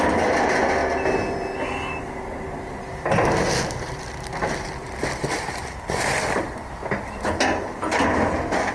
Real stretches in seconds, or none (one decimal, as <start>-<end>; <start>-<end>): 0.8-3.6; 5.0-7.6

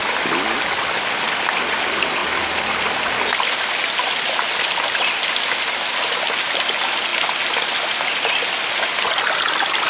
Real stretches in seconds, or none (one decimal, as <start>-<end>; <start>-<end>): 0.0-9.9

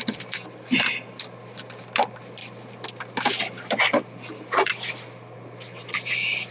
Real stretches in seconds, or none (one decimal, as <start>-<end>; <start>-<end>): 0.0-6.5

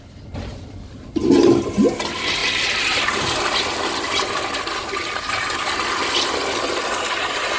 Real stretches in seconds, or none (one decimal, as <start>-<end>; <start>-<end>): 0.0-2.4; 5.5-7.6

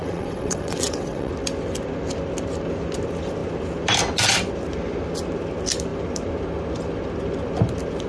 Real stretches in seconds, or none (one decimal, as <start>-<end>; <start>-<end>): 1.3-8.1

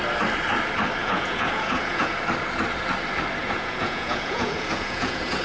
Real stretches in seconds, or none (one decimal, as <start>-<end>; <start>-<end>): 0.0-1.0; 2.2-3.4

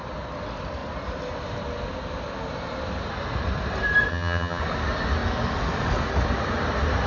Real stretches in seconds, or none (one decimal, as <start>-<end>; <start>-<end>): 0.0-4.1; 4.6-7.1